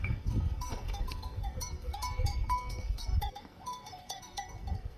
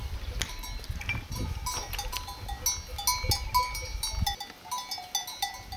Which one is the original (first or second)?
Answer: second